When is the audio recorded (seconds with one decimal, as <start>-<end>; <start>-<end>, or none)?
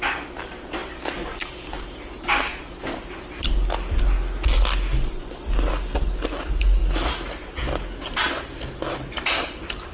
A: 0.0-9.9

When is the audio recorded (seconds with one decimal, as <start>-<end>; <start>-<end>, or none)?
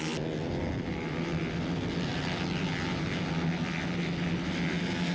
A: 0.0-5.1